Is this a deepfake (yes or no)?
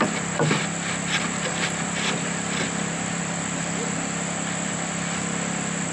no